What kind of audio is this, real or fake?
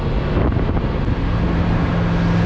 real